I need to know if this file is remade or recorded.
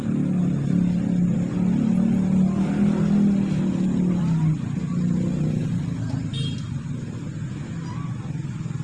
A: recorded